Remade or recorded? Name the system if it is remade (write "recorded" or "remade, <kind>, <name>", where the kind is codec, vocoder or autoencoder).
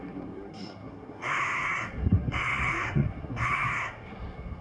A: remade, codec, SNAC